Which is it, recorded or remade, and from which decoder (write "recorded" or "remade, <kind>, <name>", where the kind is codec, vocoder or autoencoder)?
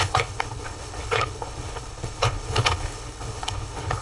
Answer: remade, codec, HILCodec